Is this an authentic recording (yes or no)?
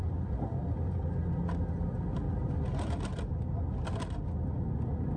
yes